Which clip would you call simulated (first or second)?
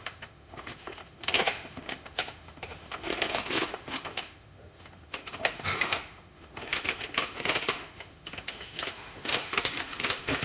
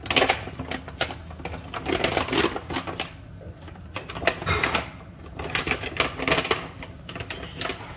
first